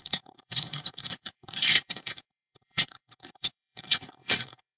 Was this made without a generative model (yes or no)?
no